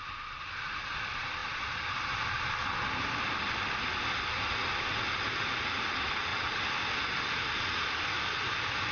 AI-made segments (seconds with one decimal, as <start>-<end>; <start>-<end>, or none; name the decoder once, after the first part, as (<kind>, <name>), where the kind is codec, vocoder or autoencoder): none